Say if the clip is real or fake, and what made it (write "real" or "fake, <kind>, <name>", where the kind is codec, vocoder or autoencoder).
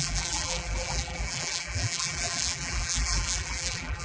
fake, vocoder, BigVGAN v2